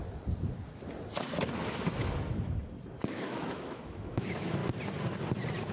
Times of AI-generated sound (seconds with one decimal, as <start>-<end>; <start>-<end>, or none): 3.0-4.6